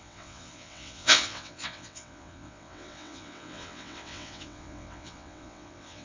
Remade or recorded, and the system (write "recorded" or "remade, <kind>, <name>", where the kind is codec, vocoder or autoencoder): remade, vocoder, WaveNeXt